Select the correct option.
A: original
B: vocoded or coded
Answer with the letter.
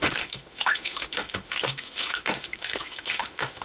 B